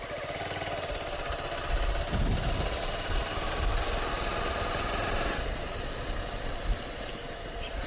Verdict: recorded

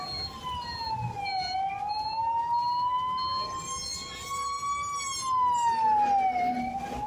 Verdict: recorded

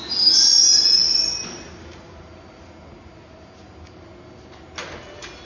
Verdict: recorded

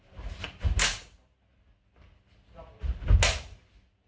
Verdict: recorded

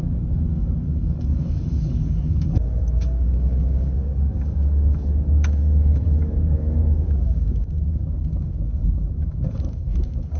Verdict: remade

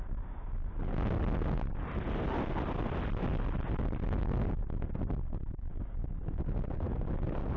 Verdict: recorded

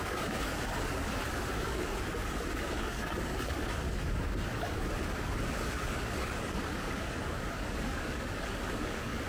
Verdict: remade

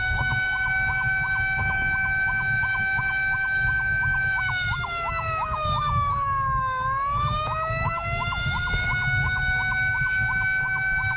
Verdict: remade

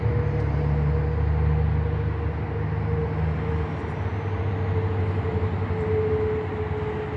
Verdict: recorded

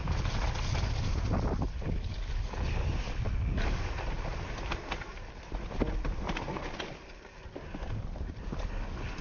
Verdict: recorded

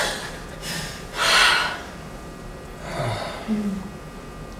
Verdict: recorded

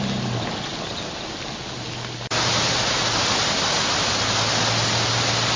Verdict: recorded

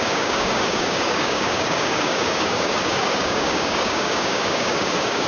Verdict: remade